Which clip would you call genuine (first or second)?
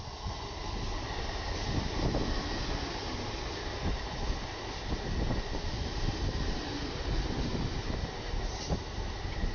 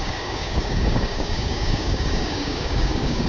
first